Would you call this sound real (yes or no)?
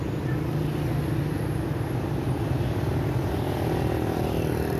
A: yes